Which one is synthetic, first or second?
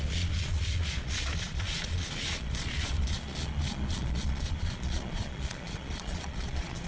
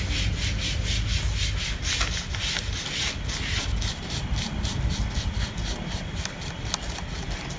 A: first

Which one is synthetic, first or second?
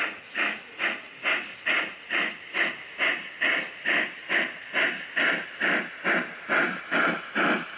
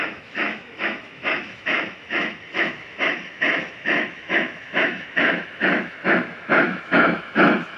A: second